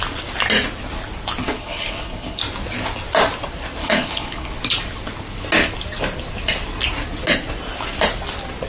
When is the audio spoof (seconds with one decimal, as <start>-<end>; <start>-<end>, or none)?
1.4-2.4; 3.8-4.5